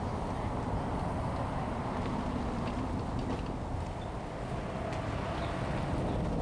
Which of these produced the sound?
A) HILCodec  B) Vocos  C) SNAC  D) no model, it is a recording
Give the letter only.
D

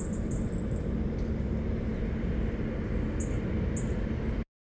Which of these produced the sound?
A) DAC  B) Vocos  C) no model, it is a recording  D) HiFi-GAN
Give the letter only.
C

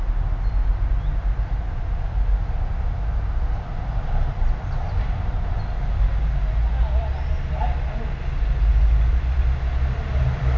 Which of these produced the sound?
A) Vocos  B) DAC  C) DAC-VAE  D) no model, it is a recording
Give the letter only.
D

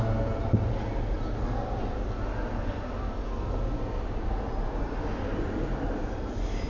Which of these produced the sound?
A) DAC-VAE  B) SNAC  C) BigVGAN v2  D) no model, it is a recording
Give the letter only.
D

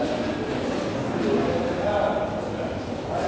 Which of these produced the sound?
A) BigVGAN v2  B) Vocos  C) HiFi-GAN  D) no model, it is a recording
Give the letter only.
D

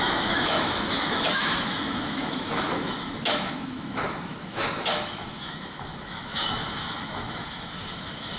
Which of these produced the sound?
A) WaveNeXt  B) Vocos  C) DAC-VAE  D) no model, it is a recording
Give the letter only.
C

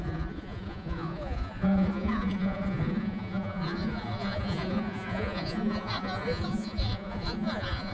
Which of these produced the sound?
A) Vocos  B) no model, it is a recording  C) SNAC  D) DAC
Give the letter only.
A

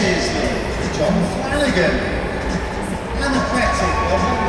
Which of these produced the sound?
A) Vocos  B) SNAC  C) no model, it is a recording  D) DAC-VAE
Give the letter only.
C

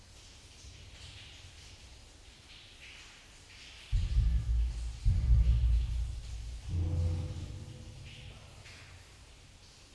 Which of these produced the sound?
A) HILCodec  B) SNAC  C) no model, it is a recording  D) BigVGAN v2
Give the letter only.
C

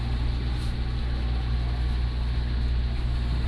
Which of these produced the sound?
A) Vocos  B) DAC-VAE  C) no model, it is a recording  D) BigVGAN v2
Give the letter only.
C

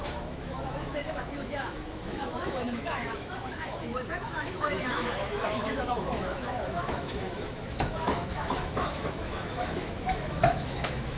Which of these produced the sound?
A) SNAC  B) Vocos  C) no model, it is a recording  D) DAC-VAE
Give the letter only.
D